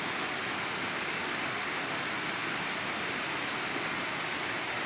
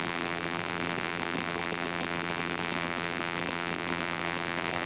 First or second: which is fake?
second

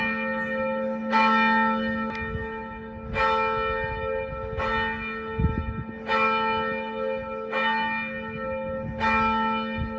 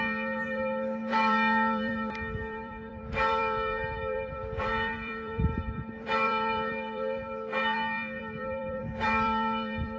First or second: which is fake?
second